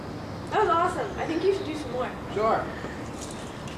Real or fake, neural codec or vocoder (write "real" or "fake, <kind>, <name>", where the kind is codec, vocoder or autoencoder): real